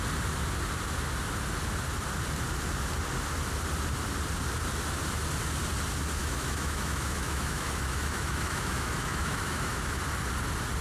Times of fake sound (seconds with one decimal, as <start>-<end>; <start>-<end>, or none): 6.2-10.0